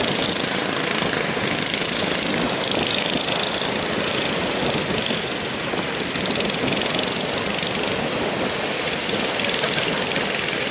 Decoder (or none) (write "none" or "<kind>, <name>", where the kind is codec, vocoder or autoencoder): none